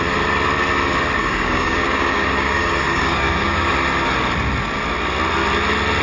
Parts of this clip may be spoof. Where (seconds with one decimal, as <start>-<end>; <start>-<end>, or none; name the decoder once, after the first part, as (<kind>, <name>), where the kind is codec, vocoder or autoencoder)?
1.2-3.7 (codec, DAC)